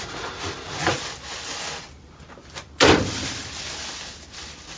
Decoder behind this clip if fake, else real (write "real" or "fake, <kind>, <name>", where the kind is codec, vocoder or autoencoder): real